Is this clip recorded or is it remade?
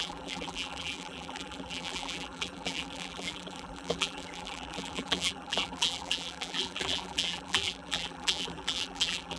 remade